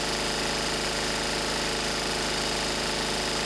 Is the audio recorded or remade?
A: recorded